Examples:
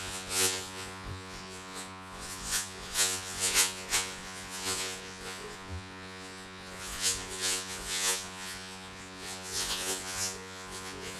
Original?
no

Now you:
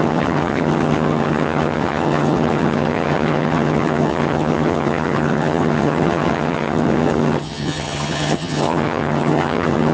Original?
no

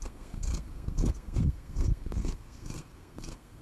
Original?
no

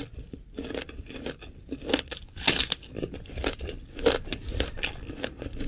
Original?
yes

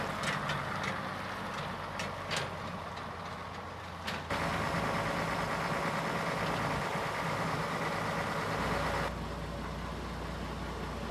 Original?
yes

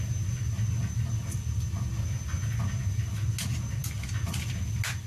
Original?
yes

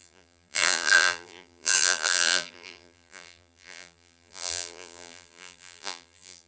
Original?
no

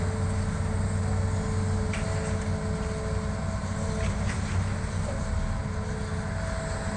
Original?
yes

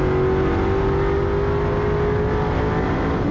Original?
yes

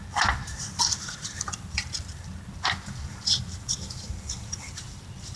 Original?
no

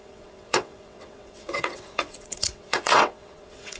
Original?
no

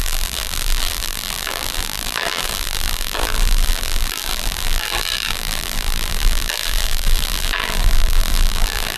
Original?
no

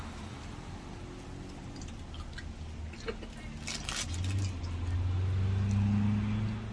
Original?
yes